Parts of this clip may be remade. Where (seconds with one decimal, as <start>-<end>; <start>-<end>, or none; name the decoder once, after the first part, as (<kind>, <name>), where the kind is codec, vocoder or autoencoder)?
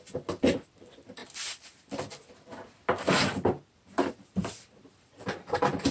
none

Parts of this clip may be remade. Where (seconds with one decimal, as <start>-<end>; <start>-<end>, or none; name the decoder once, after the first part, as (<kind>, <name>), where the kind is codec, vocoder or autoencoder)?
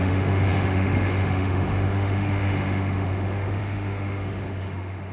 0.0-5.1 (autoencoder, DAC-VAE)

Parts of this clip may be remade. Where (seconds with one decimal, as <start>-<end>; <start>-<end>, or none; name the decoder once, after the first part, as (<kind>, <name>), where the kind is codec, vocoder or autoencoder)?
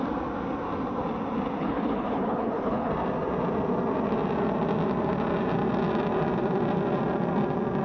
1.6-2.9 (codec, HILCodec)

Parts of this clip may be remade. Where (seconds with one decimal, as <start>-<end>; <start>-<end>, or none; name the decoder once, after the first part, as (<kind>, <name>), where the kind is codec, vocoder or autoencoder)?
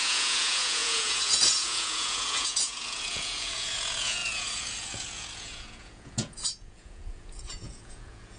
0.0-8.4 (vocoder, Vocos)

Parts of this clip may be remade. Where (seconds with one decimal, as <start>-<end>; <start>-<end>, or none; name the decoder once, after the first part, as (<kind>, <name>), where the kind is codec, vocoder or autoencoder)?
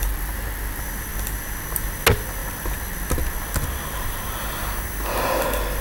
none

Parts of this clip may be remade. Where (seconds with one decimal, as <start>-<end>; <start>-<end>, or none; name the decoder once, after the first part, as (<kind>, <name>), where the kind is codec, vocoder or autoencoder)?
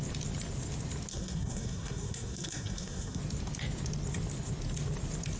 1.1-3.2 (codec, SNAC)